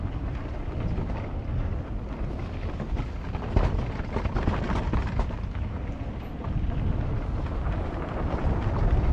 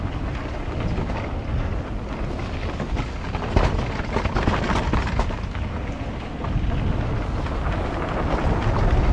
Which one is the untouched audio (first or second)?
second